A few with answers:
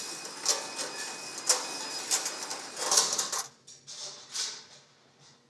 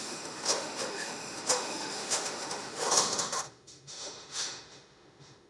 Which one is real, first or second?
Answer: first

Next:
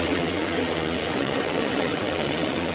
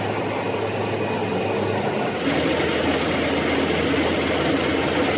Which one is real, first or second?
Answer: second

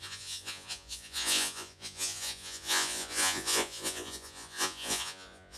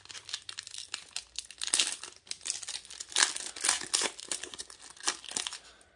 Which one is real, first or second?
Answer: second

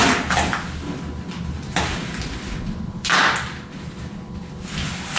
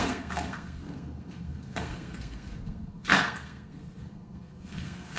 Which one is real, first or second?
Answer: first